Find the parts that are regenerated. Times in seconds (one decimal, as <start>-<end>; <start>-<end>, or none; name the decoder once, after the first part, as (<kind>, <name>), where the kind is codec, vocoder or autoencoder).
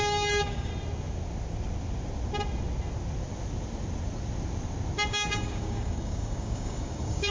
0.0-0.7 (codec, DAC); 5.1-7.3